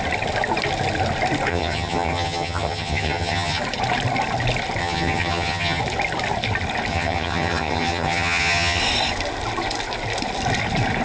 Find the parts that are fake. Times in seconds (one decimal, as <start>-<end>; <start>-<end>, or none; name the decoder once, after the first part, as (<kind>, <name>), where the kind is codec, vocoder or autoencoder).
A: 1.5-3.6 (vocoder, HiFi-GAN); 4.8-5.8; 6.9-8.8